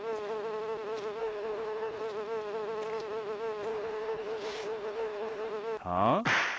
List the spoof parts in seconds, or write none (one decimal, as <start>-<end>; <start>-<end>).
1.2-2.0; 3.7-5.5